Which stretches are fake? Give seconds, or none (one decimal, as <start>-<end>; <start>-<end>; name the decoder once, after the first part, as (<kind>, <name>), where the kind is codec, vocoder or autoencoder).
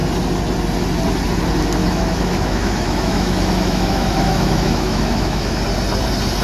1.8-5.6 (autoencoder, DAC-VAE)